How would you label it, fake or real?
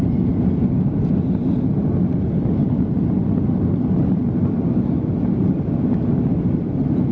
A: real